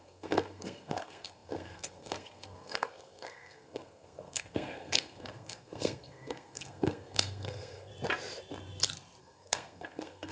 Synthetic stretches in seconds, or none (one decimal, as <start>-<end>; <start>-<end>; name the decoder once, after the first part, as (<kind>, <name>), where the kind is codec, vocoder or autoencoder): 0.0-7.9 (codec, SNAC); 9.2-10.3